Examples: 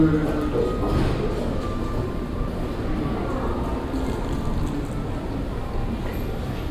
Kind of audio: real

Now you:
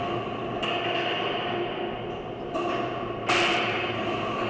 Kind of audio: real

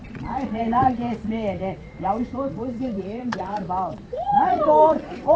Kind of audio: fake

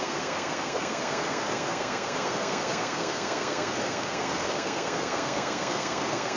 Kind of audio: fake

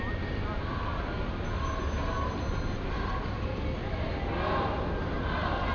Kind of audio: real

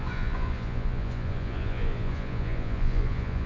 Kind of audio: fake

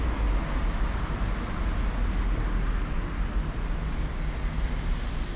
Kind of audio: real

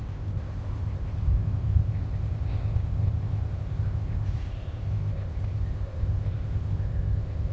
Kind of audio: fake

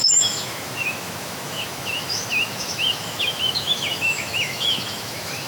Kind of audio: fake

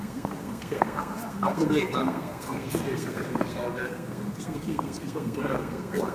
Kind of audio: fake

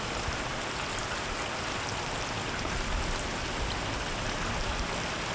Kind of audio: real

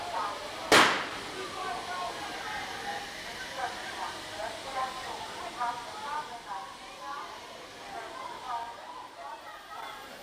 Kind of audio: real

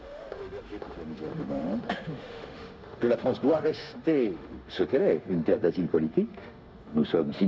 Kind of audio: fake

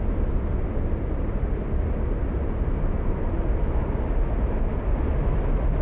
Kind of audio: real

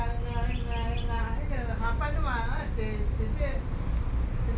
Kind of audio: real